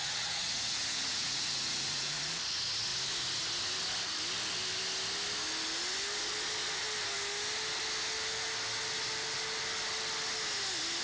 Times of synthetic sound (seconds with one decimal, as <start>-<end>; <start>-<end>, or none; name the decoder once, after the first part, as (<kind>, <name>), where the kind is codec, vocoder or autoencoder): 0.0-2.3 (vocoder, Vocos)